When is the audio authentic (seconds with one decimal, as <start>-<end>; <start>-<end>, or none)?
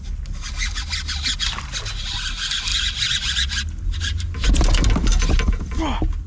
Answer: 0.0-6.3